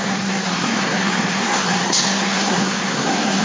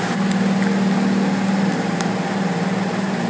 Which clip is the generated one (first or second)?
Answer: first